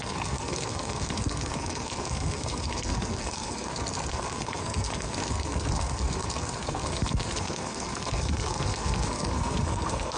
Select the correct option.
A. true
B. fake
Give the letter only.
B